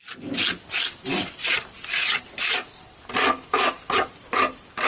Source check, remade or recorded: recorded